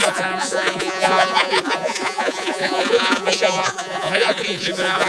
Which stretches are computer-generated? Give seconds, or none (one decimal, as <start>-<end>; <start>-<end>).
0.0-5.1